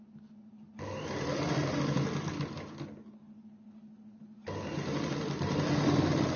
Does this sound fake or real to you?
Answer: real